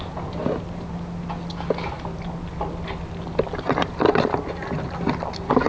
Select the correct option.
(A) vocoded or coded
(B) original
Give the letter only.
B